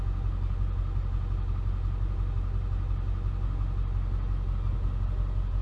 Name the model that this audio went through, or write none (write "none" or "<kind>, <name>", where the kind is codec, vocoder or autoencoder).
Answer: none